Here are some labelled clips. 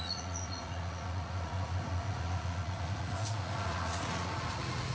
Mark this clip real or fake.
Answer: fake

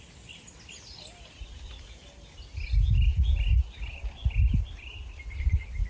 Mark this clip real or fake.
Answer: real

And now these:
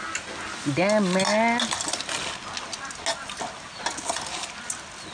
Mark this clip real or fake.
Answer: real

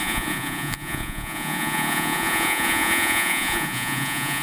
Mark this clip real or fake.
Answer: fake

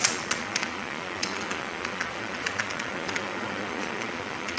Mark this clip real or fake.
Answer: fake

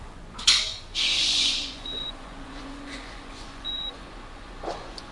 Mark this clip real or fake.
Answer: fake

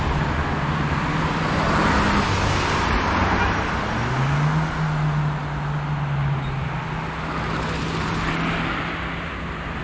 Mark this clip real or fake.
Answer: real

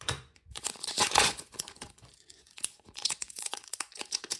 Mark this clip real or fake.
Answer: fake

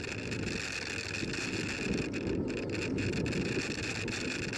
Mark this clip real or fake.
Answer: real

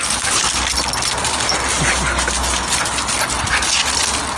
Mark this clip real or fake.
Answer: real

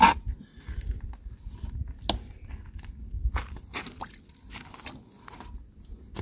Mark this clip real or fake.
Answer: real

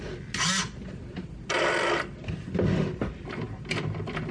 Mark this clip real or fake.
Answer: real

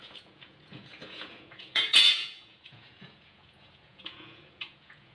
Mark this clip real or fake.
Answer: fake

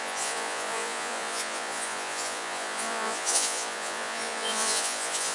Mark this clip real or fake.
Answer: fake